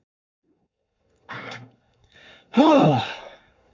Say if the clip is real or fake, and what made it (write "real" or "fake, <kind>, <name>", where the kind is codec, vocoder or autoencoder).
fake, codec, SNAC